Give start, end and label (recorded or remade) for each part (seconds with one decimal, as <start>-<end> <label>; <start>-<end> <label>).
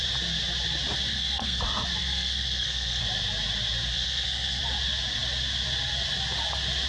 0.0-1.1 recorded; 1.1-1.6 remade; 1.6-2.0 recorded; 2.0-3.0 remade; 3.0-3.9 recorded; 3.9-4.6 remade; 4.6-6.9 recorded